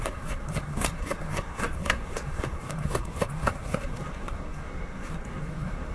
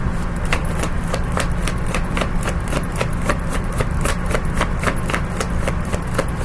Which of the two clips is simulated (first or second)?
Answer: first